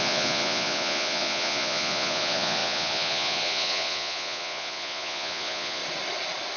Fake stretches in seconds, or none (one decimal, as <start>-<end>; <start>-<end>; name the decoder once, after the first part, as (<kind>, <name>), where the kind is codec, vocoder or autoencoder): 0.0-5.8 (vocoder, Vocos)